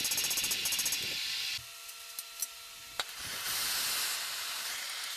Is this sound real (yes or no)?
yes